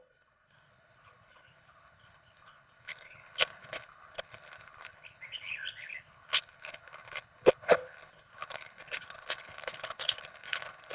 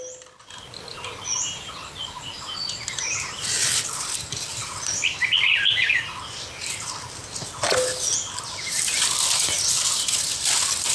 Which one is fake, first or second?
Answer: first